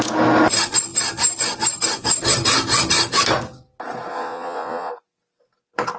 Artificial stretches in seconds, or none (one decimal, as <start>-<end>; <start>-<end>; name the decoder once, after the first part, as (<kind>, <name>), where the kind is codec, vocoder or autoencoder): 4.1-4.9 (vocoder, Vocos)

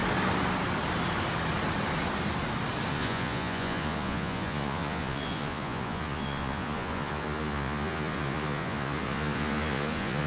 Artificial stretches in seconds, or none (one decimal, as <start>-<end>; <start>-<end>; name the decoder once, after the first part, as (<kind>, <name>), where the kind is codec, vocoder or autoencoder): 2.9-10.3 (vocoder, Vocos)

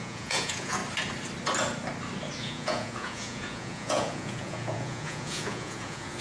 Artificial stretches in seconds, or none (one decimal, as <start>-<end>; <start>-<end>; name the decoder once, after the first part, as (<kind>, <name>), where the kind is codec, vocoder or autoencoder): 0.0-0.8 (vocoder, Vocos); 2.4-6.2

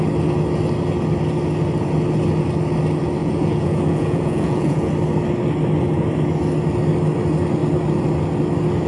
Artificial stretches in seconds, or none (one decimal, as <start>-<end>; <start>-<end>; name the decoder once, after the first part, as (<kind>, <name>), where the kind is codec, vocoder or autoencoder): 3.2-4.9 (vocoder, Vocos)

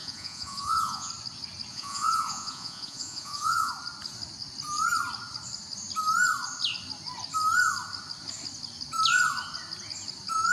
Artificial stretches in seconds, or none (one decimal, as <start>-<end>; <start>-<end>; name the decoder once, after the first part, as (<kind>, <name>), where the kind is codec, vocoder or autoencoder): 0.0-1.1 (vocoder, Vocos); 1.7-3.7

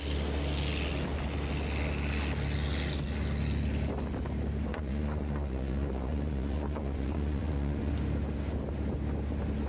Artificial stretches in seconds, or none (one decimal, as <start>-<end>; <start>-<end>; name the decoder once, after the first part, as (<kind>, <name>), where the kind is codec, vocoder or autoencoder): 4.7-7.9 (vocoder, Vocos)